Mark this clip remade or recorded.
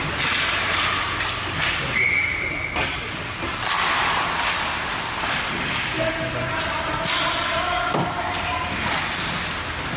recorded